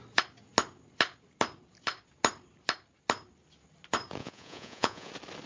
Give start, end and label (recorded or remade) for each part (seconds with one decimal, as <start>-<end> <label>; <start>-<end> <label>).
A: 0.0-4.2 recorded; 4.2-5.1 remade; 5.1-5.5 recorded